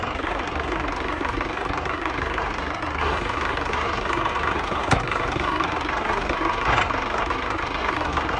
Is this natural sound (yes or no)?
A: no